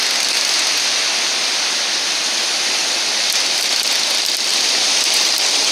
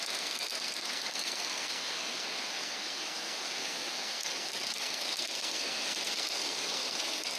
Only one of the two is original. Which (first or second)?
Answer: first